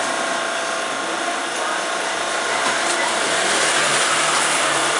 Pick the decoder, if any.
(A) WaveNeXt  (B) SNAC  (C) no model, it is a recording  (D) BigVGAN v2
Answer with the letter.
C